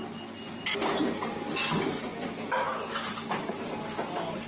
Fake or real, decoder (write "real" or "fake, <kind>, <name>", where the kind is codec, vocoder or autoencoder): real